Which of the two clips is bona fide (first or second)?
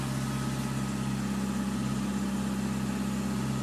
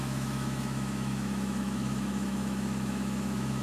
first